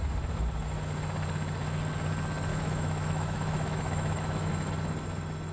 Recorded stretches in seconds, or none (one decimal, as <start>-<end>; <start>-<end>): 0.0-2.5; 4.5-5.5